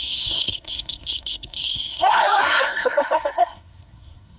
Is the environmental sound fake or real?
fake